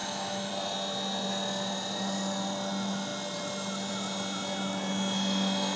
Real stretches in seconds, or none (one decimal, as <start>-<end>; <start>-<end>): 0.5-5.8